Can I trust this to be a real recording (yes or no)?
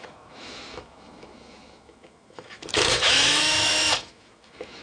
no